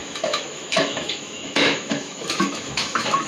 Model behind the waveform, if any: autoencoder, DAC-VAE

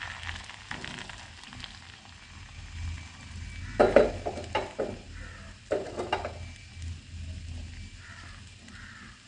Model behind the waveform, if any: none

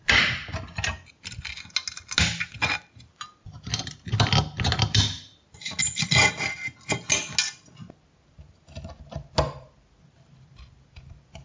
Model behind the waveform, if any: none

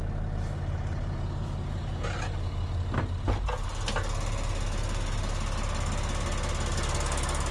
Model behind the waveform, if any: none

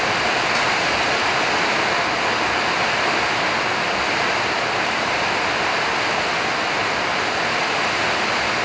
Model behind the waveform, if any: none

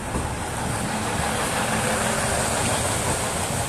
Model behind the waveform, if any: none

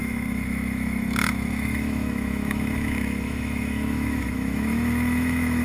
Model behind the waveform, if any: autoencoder, DAC-VAE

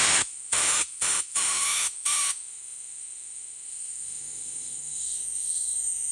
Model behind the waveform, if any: autoencoder, DAC-VAE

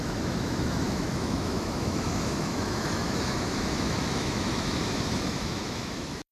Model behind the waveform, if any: autoencoder, DAC-VAE